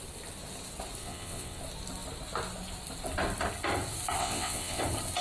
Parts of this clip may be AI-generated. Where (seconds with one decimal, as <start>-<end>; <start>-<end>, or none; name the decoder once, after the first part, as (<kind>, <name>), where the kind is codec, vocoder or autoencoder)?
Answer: 1.0-1.6 (vocoder, WaveNeXt); 4.2-4.8